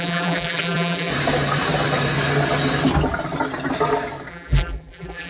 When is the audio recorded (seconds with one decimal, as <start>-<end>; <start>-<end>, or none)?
1.1-4.3